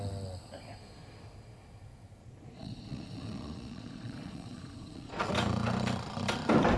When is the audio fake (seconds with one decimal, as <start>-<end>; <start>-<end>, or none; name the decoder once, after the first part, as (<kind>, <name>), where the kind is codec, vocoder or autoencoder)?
2.2-5.3 (vocoder, Vocos)